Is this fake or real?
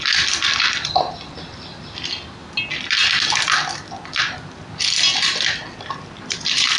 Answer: real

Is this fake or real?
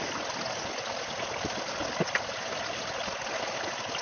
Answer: real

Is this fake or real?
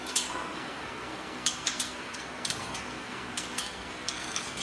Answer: fake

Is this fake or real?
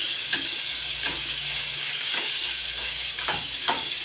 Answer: fake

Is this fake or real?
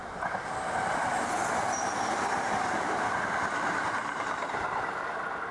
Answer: real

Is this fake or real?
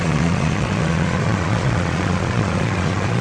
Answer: fake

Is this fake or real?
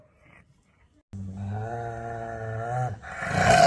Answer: real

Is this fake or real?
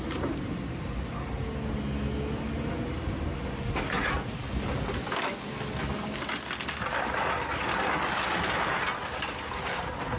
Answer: real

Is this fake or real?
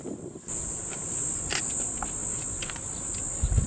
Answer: real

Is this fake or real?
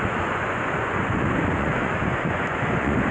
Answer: fake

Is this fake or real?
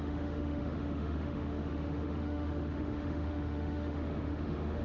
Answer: fake